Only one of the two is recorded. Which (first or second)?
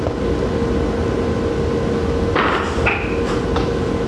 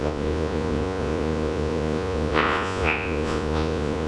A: first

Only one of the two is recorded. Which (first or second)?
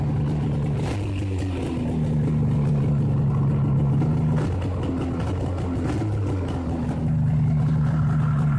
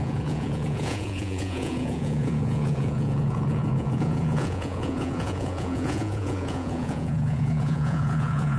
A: first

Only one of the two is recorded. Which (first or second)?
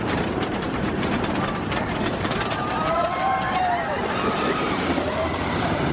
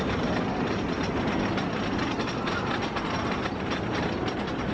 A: second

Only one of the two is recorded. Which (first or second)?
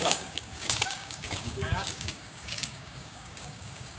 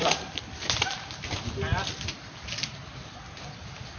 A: second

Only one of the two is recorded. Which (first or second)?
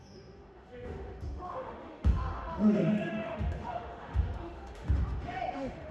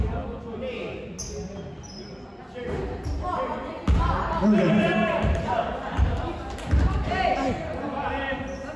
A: second